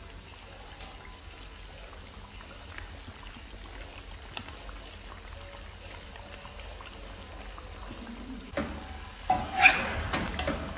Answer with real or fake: real